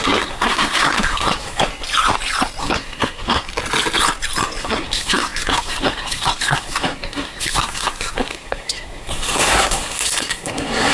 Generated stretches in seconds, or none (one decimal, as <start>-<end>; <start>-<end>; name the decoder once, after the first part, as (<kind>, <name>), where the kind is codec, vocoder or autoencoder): 0.0-1.7 (codec, SNAC); 2.6-3.5; 4.6-10.9